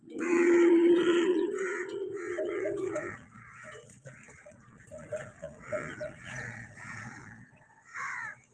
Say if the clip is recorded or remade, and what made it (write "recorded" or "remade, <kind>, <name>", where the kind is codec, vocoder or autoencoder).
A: remade, vocoder, Vocos